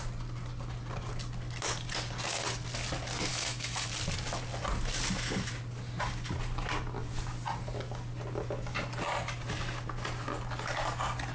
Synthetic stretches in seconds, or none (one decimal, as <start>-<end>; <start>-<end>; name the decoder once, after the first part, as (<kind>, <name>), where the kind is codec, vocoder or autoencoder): 3.3-3.9 (autoencoder, DAC-VAE)